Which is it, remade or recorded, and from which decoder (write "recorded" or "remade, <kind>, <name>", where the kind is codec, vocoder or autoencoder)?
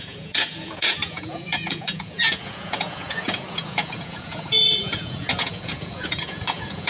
remade, vocoder, Vocos